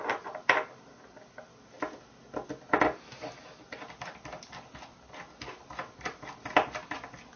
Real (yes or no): yes